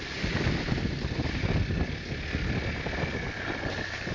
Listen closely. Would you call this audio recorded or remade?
recorded